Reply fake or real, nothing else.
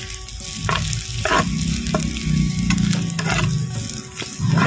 real